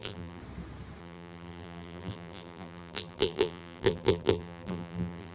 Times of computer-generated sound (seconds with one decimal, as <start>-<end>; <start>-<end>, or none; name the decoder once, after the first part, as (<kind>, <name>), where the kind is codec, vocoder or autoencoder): 0.0-0.4 (vocoder, BigVGAN v2); 1.0-5.3